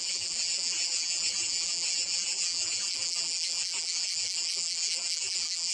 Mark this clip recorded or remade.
remade